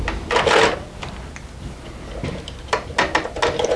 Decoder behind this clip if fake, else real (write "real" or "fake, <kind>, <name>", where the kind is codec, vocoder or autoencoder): real